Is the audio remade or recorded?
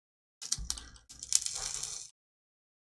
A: recorded